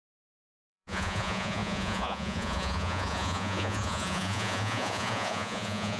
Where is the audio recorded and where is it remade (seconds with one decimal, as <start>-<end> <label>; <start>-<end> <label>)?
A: 0.0-6.0 remade